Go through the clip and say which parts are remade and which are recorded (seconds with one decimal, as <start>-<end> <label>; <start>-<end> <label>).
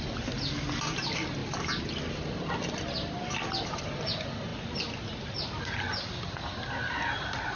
0.0-7.5 recorded